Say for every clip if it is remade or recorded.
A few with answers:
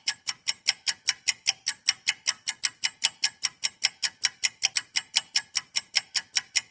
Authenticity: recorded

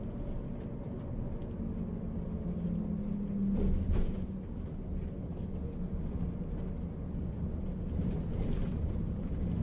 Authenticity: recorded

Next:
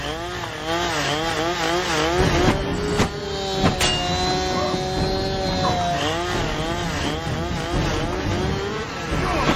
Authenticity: recorded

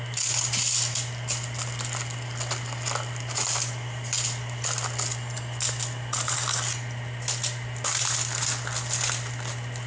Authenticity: recorded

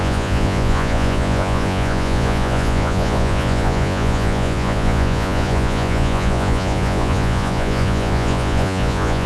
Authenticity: remade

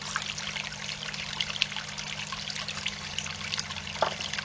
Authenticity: recorded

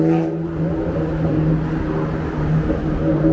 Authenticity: recorded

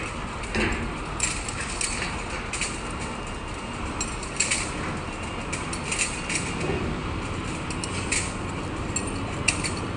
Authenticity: recorded